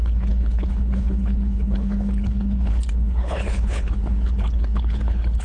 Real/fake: fake